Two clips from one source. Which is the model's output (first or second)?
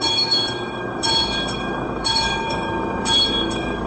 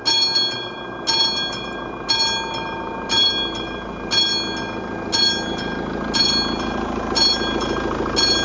first